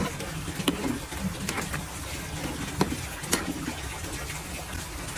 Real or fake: real